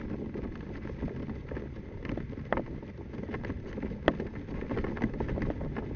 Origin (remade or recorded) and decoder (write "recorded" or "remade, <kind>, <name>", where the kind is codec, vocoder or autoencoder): recorded